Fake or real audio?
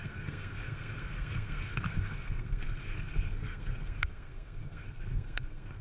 fake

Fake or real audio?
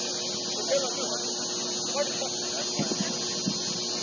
real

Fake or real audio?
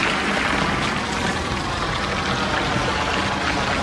real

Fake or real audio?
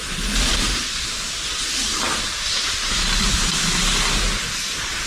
real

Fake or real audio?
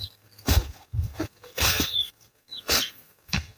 fake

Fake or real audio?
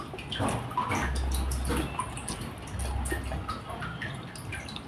real